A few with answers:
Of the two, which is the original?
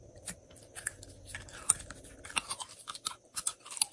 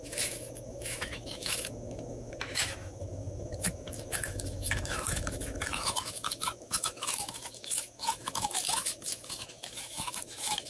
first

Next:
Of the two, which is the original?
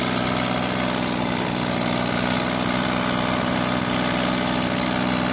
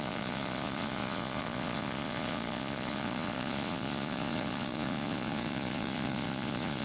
first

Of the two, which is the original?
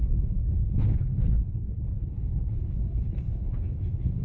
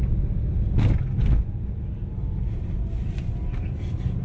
second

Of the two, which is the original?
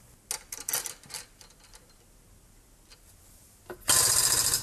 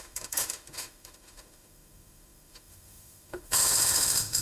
first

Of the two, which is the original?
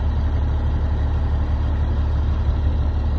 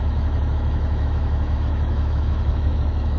first